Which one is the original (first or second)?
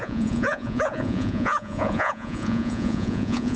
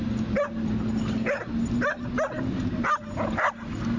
second